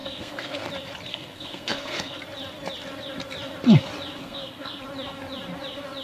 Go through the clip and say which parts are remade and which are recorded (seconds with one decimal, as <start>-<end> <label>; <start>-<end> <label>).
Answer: 0.0-0.7 remade; 0.7-1.1 recorded; 1.1-2.2 remade; 2.2-4.2 recorded; 4.2-4.8 remade; 4.8-6.0 recorded